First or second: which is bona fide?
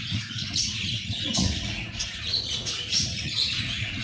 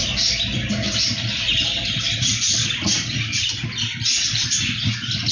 second